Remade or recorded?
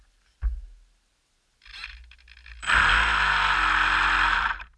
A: recorded